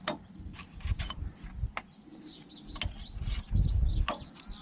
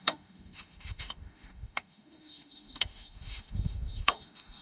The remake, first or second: second